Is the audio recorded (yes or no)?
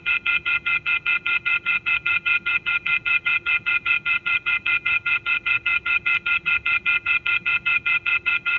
no